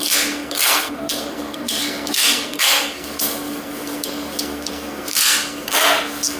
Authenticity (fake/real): fake